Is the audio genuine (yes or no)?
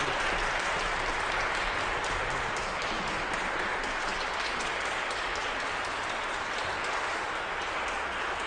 yes